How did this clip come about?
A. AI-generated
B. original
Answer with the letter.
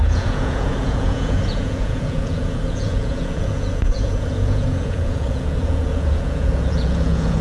A